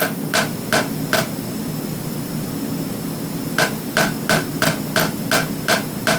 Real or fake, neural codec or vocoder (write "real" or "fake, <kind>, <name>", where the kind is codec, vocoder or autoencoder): real